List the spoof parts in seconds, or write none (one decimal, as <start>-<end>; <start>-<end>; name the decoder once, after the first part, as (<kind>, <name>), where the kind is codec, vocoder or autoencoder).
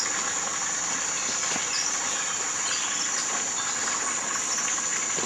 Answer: none